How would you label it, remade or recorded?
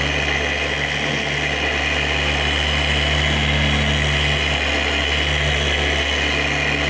recorded